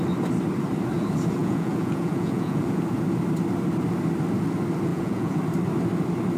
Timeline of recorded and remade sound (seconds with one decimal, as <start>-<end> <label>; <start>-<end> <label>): 0.0-1.4 recorded; 1.4-2.8 remade; 2.8-4.9 recorded; 4.9-5.4 remade; 5.4-6.4 recorded